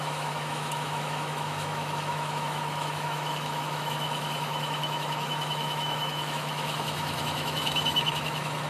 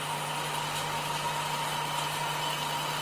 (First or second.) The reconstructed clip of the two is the first